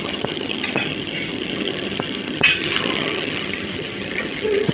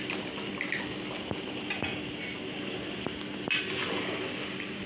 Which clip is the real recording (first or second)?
second